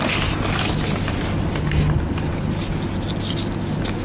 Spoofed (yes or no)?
no